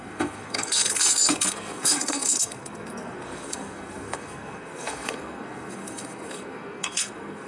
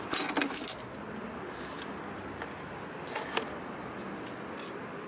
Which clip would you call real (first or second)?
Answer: second